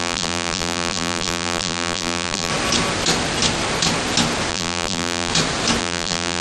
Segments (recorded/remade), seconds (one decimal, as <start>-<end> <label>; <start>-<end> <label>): 0.0-2.5 remade; 2.5-4.5 recorded; 4.5-5.3 remade; 5.3-5.8 recorded; 5.8-6.4 remade

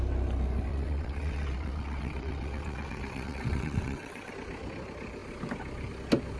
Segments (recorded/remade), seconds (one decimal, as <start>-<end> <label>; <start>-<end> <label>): 0.0-0.7 recorded; 0.7-4.3 remade; 4.3-6.4 recorded

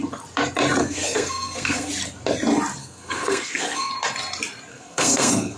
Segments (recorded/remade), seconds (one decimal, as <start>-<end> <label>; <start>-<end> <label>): 0.0-0.8 recorded; 0.8-1.9 remade; 1.9-2.8 recorded; 2.8-3.9 remade; 3.9-4.7 recorded; 4.7-5.6 remade